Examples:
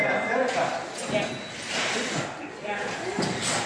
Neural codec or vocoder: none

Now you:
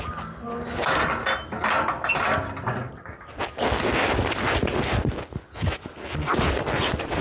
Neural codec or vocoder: none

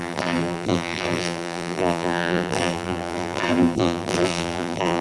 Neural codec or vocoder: vocoder, BigVGAN v2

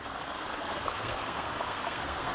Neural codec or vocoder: codec, SNAC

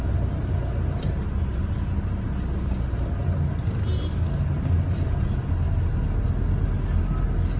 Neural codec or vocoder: none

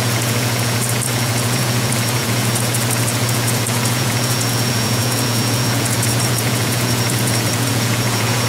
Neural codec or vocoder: vocoder, Vocos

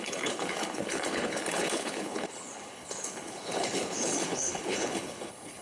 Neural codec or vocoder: codec, HILCodec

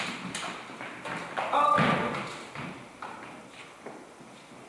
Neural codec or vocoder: none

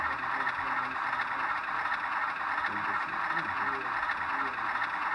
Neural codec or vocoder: none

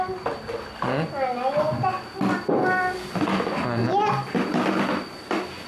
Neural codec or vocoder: none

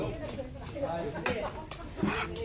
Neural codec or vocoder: none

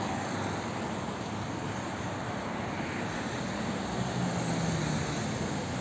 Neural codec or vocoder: none